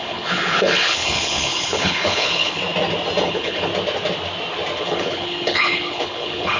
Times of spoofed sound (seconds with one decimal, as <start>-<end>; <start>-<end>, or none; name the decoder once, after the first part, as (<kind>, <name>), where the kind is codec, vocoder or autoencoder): 0.0-2.6 (codec, HILCodec); 3.2-3.7; 4.8-6.6

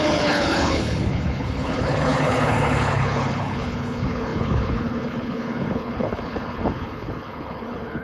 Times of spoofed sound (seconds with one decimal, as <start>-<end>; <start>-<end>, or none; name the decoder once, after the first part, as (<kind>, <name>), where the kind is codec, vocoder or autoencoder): 0.0-8.0 (codec, HILCodec)